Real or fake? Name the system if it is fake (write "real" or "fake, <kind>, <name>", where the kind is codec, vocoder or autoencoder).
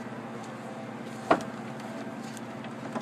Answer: real